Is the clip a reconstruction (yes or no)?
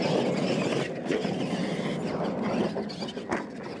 no